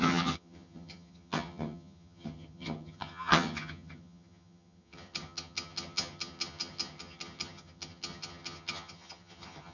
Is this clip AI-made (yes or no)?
yes